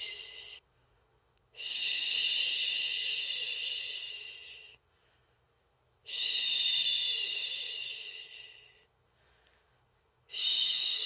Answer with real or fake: fake